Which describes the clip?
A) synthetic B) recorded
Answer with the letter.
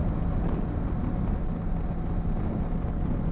B